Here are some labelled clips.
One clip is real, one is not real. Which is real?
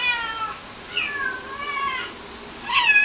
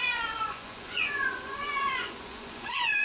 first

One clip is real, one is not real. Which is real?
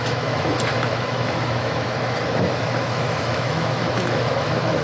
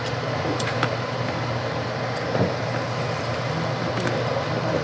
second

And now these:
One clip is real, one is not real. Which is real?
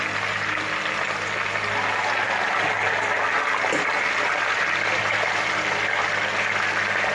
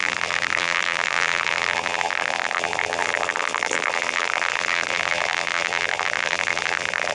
first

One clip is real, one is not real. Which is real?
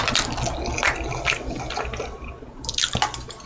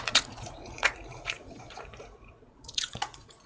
first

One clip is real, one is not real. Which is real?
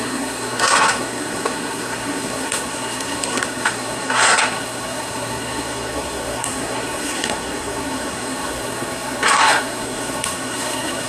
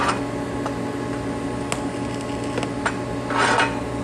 second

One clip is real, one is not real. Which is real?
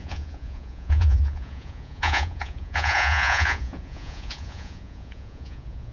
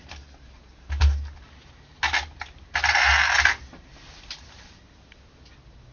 second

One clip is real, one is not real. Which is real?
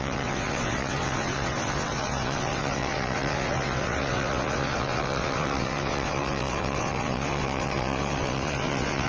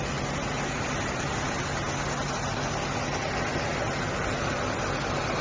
second